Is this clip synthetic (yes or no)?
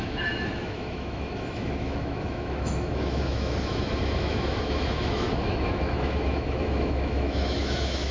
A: yes